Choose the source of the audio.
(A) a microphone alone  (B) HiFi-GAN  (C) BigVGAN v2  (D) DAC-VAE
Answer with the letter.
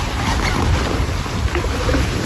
A